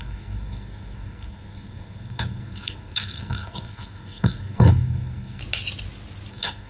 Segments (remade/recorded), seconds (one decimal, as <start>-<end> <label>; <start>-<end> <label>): 0.0-5.4 remade; 5.4-6.3 recorded; 6.3-6.7 remade